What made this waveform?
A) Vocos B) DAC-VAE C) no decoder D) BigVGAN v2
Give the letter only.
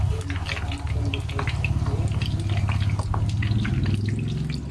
C